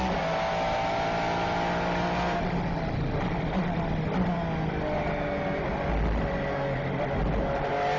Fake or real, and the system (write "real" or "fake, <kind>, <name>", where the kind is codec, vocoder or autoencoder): real